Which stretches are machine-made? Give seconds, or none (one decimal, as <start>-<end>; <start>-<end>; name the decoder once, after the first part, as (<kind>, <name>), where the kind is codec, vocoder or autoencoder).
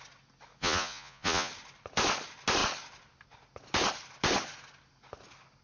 0.6-1.5 (vocoder, Vocos)